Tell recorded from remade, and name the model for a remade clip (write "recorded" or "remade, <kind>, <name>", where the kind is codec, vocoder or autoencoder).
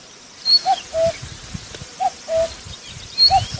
remade, vocoder, BigVGAN v2